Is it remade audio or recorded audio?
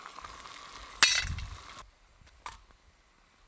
recorded